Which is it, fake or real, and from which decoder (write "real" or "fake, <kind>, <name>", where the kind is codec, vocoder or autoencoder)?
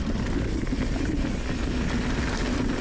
real